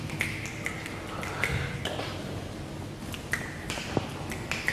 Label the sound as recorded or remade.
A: recorded